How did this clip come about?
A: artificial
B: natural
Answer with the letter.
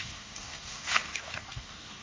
A